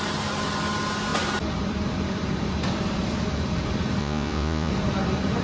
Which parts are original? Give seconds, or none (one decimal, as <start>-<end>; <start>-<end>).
0.0-4.0; 4.7-5.4